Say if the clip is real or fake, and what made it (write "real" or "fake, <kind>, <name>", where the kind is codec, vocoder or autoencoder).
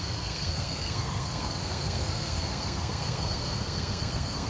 fake, codec, SNAC